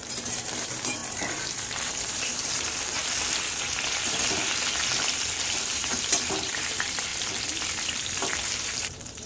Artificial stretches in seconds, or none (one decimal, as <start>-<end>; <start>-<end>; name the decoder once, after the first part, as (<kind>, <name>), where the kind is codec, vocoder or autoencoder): 0.0-3.0 (vocoder, BigVGAN v2); 5.4-7.1; 7.9-9.3